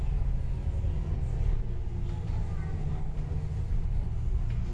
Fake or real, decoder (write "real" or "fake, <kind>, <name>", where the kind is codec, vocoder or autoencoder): real